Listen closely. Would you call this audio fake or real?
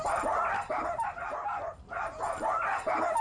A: real